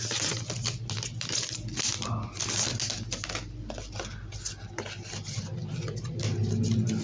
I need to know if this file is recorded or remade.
recorded